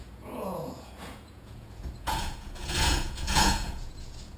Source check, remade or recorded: remade